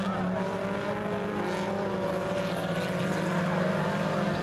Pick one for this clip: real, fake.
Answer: real